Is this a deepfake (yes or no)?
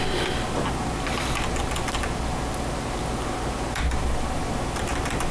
no